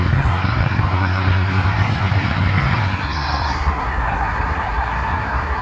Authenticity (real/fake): fake